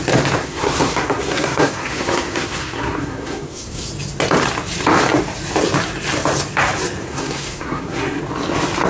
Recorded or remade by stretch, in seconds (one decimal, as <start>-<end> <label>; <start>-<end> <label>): 0.0-0.4 recorded; 0.4-3.9 remade; 3.9-7.0 recorded; 7.0-8.2 remade; 8.2-8.9 recorded